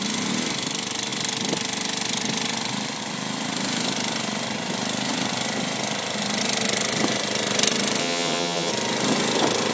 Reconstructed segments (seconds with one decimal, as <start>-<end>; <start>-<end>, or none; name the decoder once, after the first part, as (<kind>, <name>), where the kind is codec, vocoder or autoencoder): 8.0-8.7 (vocoder, HiFi-GAN)